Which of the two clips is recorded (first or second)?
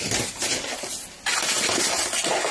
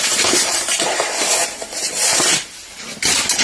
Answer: first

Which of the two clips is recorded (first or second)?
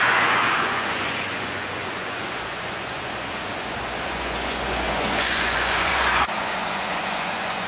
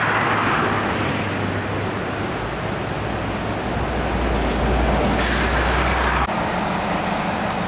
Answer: second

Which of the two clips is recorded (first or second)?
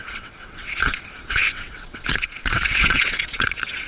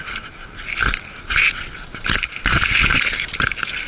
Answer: second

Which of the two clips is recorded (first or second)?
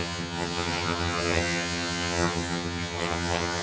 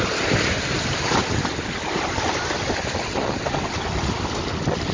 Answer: second